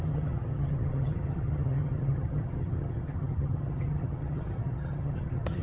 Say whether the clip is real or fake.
fake